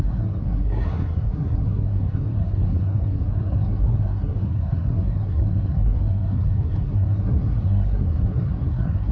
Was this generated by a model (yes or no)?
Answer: yes